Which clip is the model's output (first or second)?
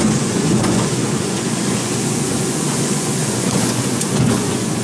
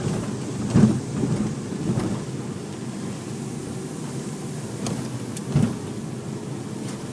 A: first